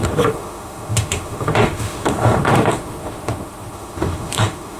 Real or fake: fake